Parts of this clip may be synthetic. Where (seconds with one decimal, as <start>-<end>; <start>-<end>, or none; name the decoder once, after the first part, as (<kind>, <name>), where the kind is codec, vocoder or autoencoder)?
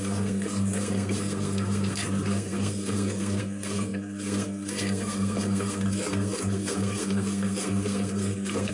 0.0-8.7 (codec, SNAC)